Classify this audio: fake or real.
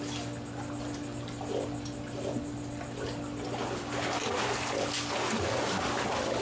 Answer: real